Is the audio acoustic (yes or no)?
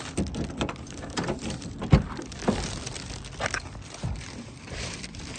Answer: no